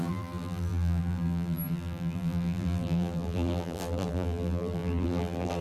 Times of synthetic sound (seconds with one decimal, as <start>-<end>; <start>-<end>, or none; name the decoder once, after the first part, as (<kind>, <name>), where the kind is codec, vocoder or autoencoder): 0.0-5.6 (vocoder, BigVGAN v2)